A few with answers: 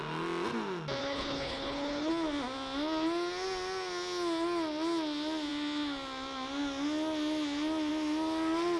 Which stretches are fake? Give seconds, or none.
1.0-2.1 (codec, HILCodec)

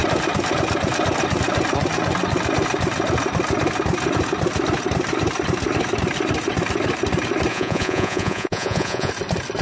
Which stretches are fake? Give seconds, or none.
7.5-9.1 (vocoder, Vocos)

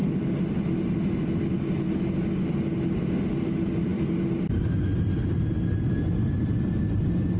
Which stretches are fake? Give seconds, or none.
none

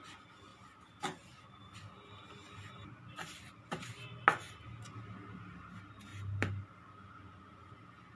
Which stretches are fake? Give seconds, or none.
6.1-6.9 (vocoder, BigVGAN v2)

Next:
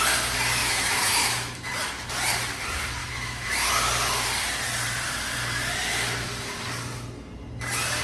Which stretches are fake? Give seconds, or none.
0.6-1.7 (autoencoder, DAC-VAE); 3.0-3.7

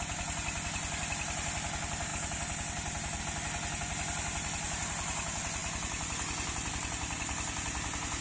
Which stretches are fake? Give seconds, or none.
none

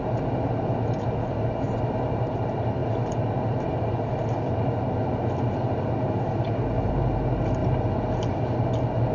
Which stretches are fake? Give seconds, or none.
none

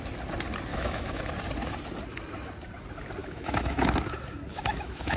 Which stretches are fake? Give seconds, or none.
0.7-1.2 (autoencoder, DAC-VAE); 3.2-3.9; 4.5-5.2